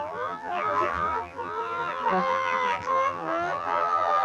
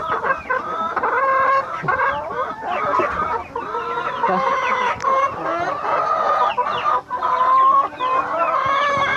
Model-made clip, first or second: first